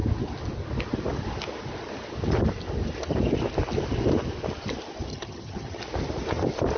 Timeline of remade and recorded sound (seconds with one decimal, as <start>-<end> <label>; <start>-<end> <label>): 0.0-5.1 recorded; 5.1-5.8 remade; 5.8-6.8 recorded